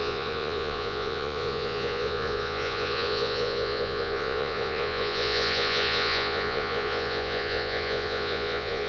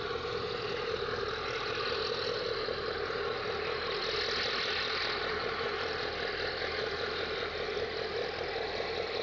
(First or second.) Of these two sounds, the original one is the second